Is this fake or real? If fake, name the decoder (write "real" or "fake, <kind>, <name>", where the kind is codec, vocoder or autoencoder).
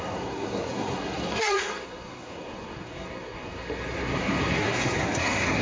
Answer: fake, codec, SNAC